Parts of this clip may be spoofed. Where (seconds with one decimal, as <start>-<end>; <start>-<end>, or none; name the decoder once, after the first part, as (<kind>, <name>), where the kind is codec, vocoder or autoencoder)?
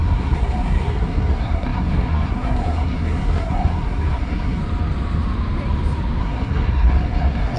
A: 0.0-4.6 (codec, SNAC); 6.2-7.6